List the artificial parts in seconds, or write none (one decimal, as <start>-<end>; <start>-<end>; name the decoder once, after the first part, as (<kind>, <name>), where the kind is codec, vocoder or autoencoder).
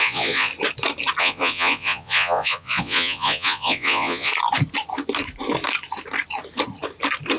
0.0-0.5 (vocoder, Vocos); 1.2-4.3